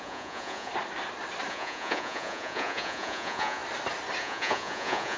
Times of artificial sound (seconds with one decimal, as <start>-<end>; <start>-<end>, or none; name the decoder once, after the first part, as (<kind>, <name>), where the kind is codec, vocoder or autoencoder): 0.0-0.7 (vocoder, Vocos); 1.5-3.6; 4.2-5.2